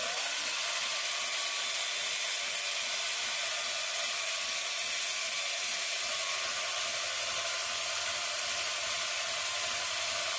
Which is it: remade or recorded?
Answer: recorded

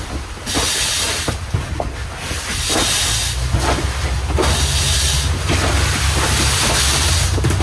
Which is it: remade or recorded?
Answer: recorded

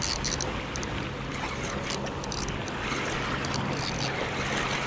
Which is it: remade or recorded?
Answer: recorded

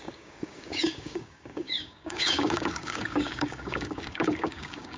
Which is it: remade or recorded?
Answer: remade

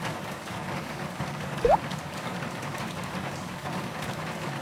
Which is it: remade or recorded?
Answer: remade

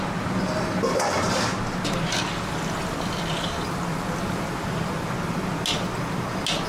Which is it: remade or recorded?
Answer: recorded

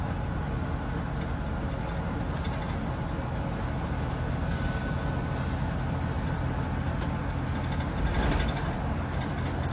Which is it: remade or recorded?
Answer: recorded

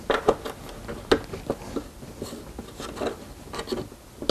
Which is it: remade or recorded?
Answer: recorded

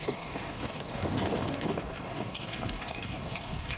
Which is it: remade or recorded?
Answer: remade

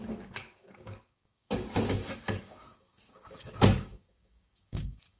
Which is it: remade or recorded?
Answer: remade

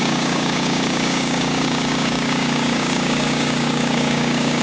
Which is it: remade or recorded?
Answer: remade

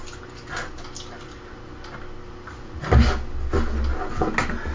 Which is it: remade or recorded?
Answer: recorded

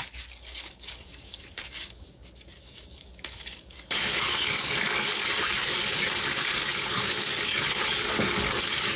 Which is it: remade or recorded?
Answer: remade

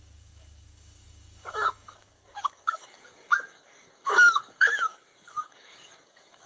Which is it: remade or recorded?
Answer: remade